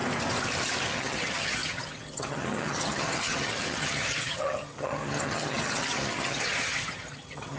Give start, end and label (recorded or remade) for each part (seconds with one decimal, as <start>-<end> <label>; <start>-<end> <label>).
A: 0.0-0.9 recorded; 0.9-7.6 remade